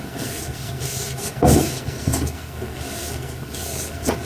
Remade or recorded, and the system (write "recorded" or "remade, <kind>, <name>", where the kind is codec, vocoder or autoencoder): remade, codec, SNAC